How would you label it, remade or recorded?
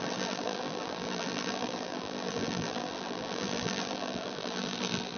remade